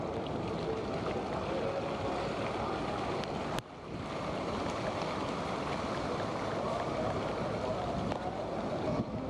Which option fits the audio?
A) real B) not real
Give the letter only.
A